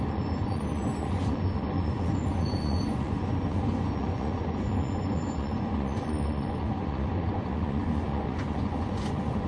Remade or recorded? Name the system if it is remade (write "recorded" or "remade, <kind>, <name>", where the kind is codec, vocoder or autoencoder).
remade, vocoder, Vocos